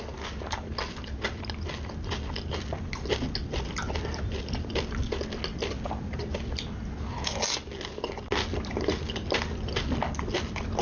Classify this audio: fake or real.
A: real